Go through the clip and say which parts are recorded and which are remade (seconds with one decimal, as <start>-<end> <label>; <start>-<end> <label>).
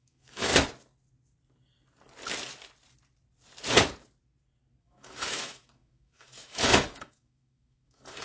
0.0-0.5 remade; 0.5-4.8 recorded; 4.8-8.2 remade